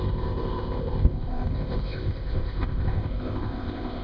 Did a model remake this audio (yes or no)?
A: yes